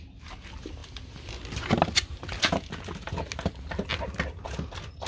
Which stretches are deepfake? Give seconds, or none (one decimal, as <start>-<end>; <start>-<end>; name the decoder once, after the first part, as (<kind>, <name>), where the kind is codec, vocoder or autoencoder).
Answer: none